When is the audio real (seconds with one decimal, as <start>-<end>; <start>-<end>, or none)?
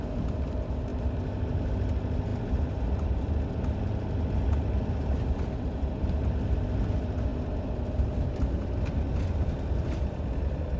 0.0-10.8